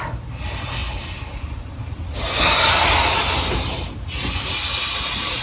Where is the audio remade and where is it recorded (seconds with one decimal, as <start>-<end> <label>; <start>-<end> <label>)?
0.0-5.4 recorded